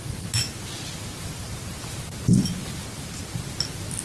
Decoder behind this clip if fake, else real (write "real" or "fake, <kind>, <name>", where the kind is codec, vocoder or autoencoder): real